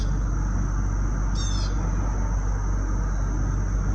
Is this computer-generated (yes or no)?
no